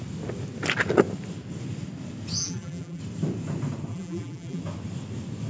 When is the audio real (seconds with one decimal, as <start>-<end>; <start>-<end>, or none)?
0.0-2.4; 3.0-3.9; 4.6-5.5